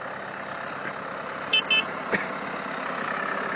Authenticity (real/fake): real